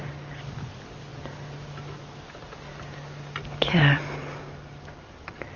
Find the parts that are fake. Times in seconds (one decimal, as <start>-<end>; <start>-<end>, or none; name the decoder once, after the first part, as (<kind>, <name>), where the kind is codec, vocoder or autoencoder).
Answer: none